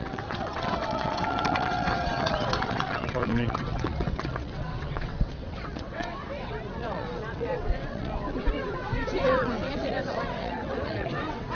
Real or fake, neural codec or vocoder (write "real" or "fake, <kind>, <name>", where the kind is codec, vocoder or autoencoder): fake, vocoder, WaveNeXt